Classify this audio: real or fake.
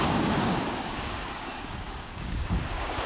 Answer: fake